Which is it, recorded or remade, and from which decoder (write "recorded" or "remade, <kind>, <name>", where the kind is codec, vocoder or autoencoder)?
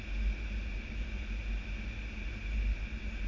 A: recorded